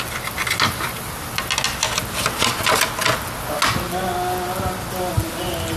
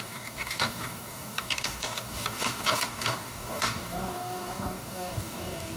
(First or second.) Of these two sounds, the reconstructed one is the second